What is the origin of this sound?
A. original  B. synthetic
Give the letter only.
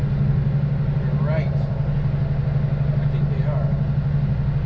A